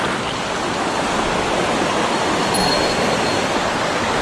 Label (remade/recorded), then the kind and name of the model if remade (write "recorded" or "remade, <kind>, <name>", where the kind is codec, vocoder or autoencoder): recorded